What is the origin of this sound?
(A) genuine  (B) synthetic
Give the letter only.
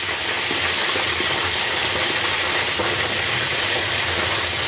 A